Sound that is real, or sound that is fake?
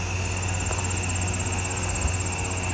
real